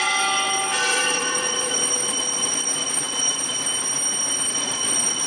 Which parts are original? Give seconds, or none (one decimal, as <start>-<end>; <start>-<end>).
0.0-0.9; 3.6-4.5